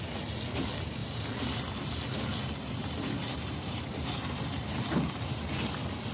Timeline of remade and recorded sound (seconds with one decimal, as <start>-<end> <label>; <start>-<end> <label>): 0.0-3.2 recorded; 3.2-5.5 remade; 5.5-6.1 recorded